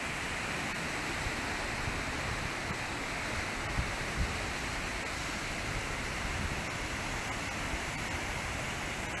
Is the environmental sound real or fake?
real